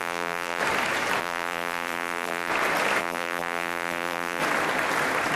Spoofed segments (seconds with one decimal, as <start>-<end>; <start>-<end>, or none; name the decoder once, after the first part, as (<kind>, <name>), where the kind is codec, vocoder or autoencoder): 0.0-0.6 (vocoder, BigVGAN v2); 1.2-2.5; 3.0-4.4